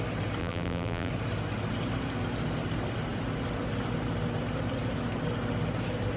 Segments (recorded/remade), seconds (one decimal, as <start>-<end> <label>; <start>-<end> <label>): 0.0-0.4 recorded; 0.4-1.1 remade; 1.1-6.2 recorded